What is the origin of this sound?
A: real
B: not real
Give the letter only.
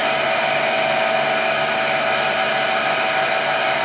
A